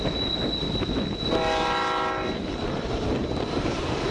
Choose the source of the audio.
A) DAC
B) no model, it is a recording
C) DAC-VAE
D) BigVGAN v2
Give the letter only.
B